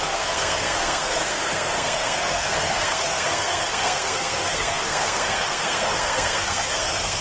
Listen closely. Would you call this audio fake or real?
fake